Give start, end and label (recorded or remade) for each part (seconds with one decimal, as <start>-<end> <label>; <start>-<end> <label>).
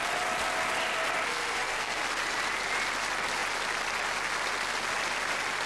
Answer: 0.0-1.3 recorded; 1.3-2.0 remade; 2.0-5.7 recorded